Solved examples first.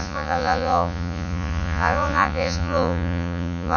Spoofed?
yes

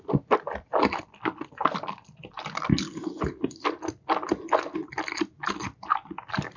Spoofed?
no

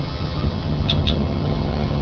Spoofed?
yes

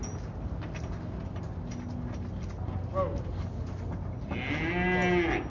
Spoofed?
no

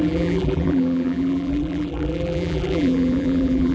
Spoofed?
yes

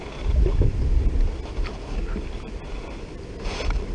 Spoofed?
no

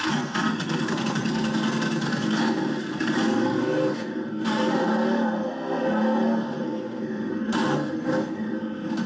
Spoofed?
yes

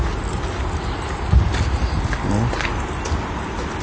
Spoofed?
no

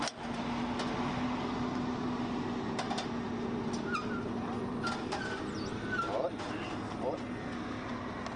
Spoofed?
no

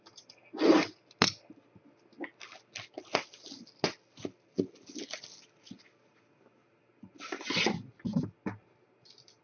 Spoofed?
no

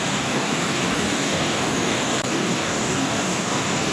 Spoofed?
yes